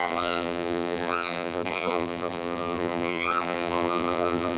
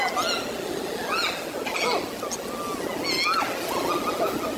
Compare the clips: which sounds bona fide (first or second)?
second